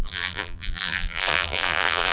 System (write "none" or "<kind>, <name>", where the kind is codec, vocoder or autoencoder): vocoder, BigVGAN v2